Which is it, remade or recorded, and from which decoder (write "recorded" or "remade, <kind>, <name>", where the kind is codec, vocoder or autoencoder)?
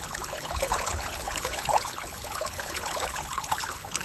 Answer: remade, codec, HILCodec